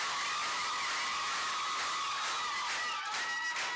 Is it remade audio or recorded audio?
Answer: recorded